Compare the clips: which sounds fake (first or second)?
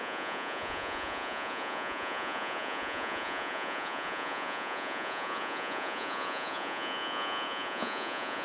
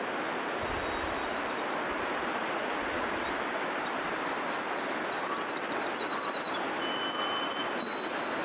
first